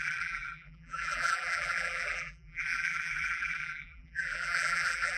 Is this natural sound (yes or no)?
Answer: no